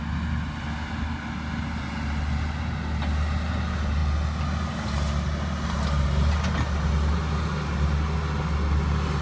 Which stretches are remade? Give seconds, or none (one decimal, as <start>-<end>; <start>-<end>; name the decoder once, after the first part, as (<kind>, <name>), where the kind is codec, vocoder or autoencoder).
none